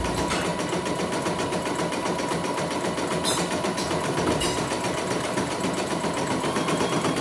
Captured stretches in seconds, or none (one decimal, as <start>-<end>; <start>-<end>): 0.5-2.3